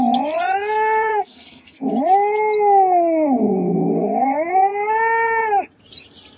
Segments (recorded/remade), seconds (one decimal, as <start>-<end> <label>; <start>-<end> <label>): 0.0-1.1 recorded; 1.1-1.9 remade; 1.9-3.4 recorded; 3.4-3.9 remade; 3.9-6.4 recorded